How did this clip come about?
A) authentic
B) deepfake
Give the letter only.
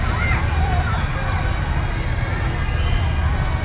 A